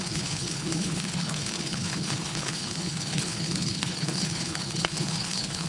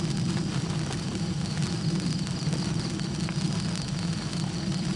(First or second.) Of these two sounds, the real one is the second